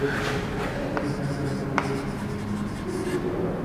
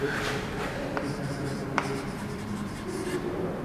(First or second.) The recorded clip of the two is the first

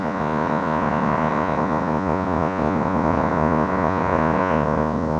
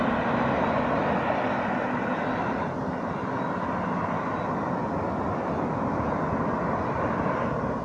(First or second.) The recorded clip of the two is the second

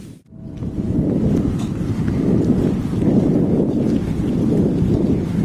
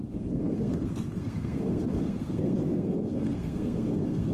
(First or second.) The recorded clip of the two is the first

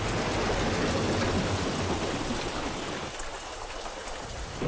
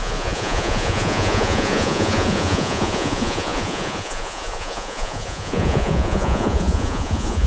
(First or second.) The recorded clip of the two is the first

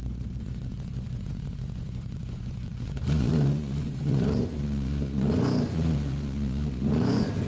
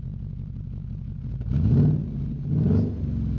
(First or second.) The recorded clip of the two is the second